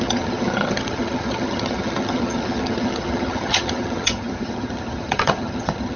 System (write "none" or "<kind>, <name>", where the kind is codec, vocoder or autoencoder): vocoder, HiFi-GAN